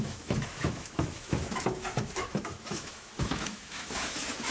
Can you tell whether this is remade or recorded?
remade